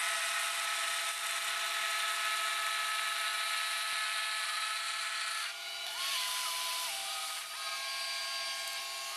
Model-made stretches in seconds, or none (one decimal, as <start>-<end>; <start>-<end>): none